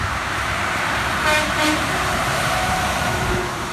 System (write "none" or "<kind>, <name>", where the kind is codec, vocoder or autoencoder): vocoder, BigVGAN v2